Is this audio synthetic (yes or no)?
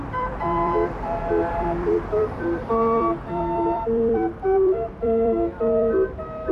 yes